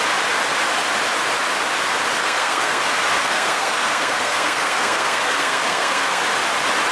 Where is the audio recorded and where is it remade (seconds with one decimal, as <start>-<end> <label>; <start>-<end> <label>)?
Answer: 0.0-2.2 recorded; 2.2-2.8 remade; 2.8-3.2 recorded; 3.2-6.2 remade; 6.2-6.9 recorded